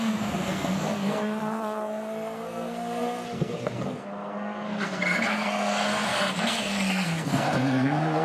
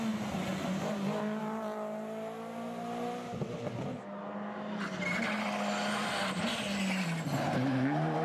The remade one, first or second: first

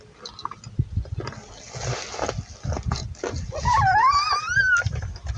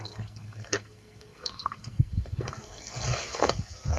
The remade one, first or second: second